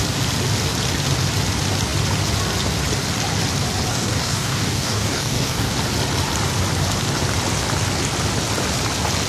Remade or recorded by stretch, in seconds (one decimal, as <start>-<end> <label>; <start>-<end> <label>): 0.0-3.9 recorded; 3.9-5.7 remade; 5.7-9.3 recorded